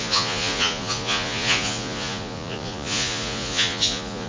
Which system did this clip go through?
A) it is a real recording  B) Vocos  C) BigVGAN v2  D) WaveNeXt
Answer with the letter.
B